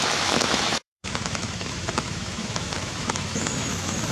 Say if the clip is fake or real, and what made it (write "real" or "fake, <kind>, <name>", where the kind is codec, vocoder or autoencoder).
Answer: fake, autoencoder, DAC-VAE